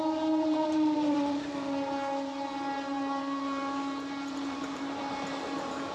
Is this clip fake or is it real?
fake